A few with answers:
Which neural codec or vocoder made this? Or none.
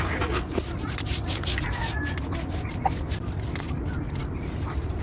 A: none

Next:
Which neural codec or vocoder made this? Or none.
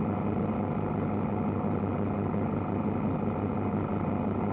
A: none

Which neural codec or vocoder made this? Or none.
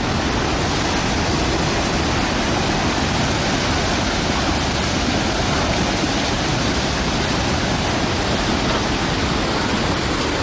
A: none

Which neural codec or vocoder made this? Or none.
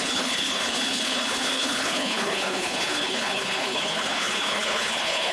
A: codec, HILCodec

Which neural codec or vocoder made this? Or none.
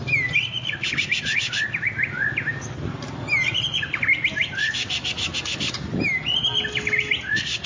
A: none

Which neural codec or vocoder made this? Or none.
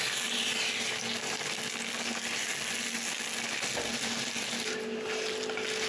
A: none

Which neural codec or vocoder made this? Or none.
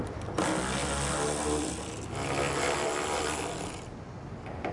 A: none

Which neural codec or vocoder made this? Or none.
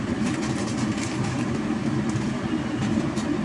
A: none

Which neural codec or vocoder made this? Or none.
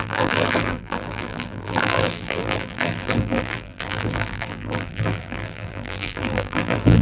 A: vocoder, BigVGAN v2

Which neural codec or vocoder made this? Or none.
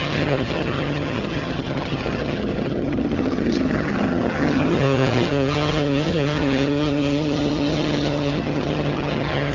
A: vocoder, HiFi-GAN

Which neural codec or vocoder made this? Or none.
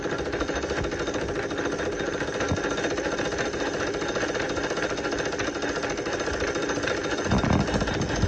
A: none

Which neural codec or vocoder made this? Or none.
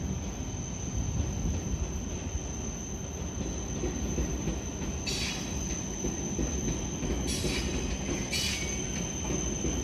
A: none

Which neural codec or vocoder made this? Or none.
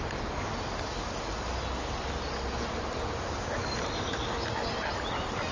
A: none